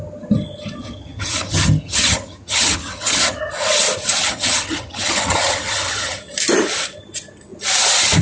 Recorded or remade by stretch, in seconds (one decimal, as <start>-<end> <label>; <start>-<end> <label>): 0.0-0.8 recorded; 0.8-3.5 remade; 3.5-4.2 recorded; 4.2-6.2 remade; 6.2-8.2 recorded